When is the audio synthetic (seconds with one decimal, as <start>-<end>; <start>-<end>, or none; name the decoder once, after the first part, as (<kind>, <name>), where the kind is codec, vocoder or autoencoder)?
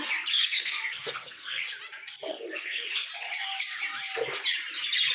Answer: 0.4-1.6 (codec, SNAC); 2.3-2.9